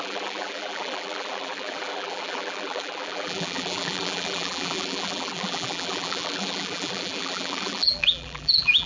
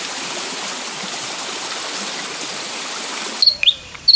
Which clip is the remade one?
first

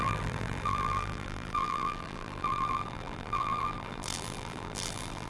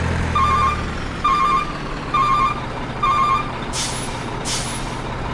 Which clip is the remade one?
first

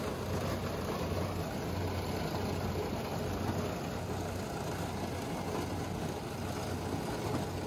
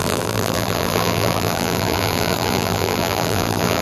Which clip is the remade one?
second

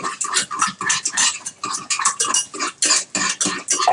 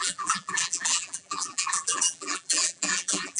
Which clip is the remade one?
second